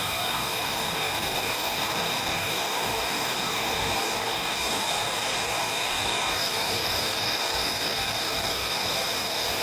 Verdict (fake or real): fake